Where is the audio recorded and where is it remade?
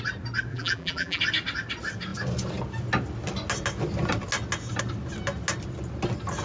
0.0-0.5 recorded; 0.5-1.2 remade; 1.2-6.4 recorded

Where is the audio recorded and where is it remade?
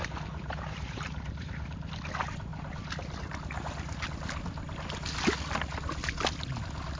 0.0-1.5 remade; 1.5-7.0 recorded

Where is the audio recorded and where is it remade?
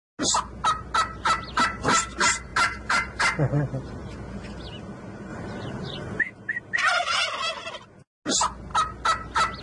0.0-2.5 recorded; 2.5-3.2 remade; 3.2-5.3 recorded; 5.3-6.2 remade; 6.2-9.6 recorded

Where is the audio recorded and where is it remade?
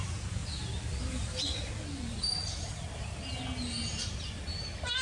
0.0-5.0 recorded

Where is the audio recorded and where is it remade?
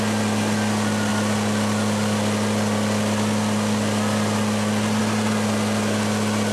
0.0-6.5 recorded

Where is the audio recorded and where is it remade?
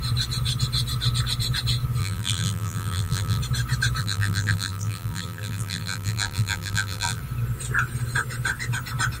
0.0-2.0 recorded; 2.0-3.4 remade; 3.4-4.0 recorded; 4.0-7.2 remade; 7.2-9.2 recorded